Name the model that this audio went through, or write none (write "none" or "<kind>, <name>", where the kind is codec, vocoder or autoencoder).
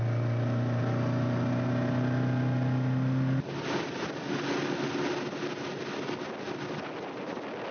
none